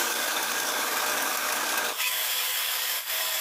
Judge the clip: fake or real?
fake